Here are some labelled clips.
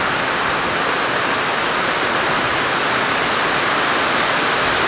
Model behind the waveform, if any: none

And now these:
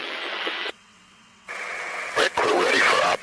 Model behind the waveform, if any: vocoder, WaveNeXt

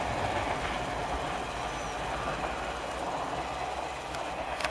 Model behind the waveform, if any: none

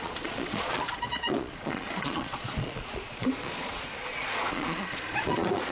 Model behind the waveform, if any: vocoder, Vocos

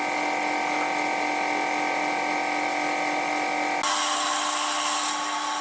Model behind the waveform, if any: none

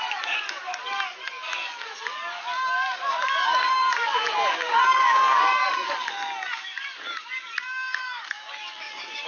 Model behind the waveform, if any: codec, DAC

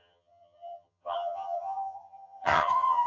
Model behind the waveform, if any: vocoder, HiFi-GAN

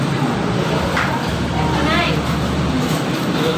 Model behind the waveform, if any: none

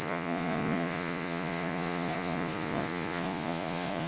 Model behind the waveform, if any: vocoder, Vocos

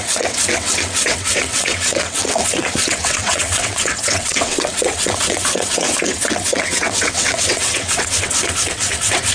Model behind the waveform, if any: vocoder, WaveNeXt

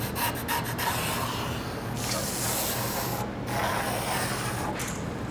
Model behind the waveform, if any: none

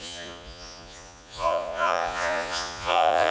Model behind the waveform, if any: vocoder, Vocos